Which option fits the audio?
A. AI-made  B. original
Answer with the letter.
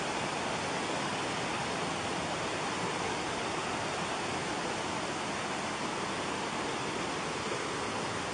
B